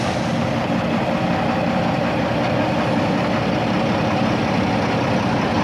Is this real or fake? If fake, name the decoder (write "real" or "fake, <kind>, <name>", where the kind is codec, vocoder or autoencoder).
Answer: real